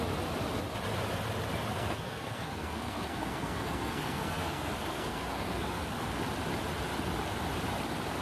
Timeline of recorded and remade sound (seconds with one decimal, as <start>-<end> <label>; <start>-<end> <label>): 0.0-1.7 recorded; 1.7-6.2 remade; 6.2-8.2 recorded